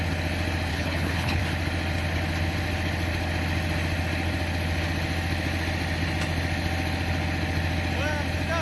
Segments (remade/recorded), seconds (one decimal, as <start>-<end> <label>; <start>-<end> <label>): 0.0-0.7 recorded; 0.7-1.4 remade; 1.4-8.6 recorded